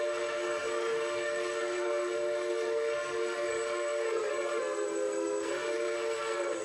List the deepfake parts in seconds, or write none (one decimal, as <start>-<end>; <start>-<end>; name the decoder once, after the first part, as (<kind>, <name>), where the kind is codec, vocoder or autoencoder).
0.0-6.6 (codec, SNAC)